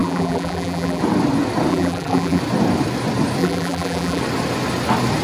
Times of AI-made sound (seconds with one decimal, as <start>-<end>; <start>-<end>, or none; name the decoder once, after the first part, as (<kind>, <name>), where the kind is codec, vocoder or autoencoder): 0.0-1.0 (vocoder, BigVGAN v2); 1.7-2.4; 3.4-4.2